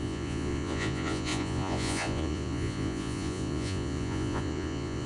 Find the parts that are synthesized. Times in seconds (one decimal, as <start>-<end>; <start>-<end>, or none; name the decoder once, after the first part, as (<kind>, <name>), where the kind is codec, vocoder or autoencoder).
0.0-5.1 (vocoder, Vocos)